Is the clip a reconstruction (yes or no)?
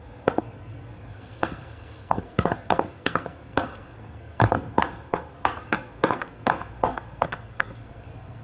yes